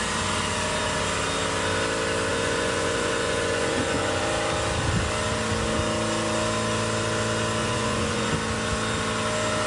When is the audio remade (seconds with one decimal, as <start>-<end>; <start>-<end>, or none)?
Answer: 2.3-4.2; 7.6-8.3